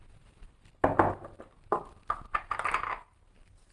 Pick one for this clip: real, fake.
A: real